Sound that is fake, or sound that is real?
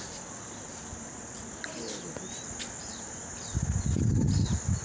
real